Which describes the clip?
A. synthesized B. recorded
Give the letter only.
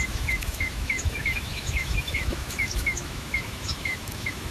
A